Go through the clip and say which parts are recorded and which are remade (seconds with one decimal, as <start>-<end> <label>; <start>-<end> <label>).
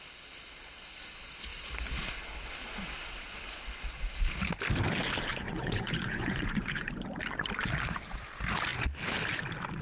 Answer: 0.0-5.3 recorded; 5.3-6.9 remade; 6.9-9.8 recorded